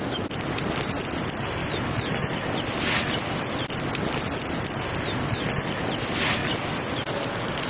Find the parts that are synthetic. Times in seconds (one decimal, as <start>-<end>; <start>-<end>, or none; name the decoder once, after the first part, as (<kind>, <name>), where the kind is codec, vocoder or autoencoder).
none